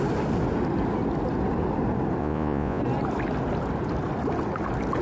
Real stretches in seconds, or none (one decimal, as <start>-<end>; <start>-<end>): 0.0-2.2; 2.8-5.0